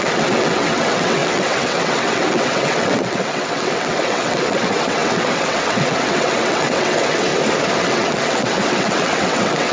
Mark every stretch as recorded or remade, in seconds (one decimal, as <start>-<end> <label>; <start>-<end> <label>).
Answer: 0.0-7.3 remade; 7.3-7.8 recorded; 7.8-9.7 remade